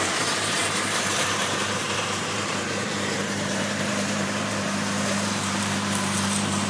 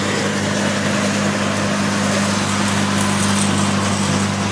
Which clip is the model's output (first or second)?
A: first